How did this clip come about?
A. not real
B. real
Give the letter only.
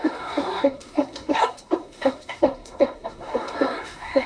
A